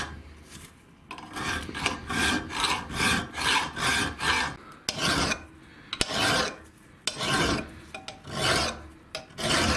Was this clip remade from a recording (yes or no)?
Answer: no